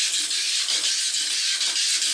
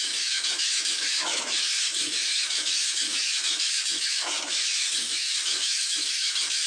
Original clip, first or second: first